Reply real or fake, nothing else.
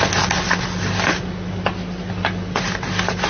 real